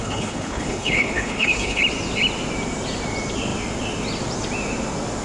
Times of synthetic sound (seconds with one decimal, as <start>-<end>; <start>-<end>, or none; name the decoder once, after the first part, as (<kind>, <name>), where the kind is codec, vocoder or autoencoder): 0.0-1.8 (codec, HILCodec)